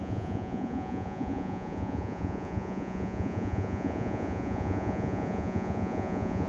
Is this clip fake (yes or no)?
yes